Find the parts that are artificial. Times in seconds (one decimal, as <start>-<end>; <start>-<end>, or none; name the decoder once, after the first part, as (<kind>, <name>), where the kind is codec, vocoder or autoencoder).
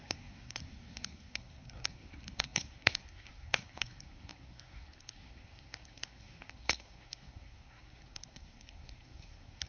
0.0-9.7 (codec, SNAC)